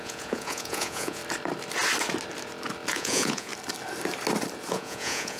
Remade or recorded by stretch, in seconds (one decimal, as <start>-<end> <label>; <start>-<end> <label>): 0.0-1.2 remade; 1.2-2.9 recorded; 2.9-3.5 remade; 3.5-4.7 recorded; 4.7-5.4 remade